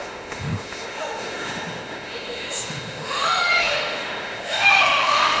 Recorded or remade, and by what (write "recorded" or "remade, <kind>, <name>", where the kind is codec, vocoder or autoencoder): remade, autoencoder, DAC-VAE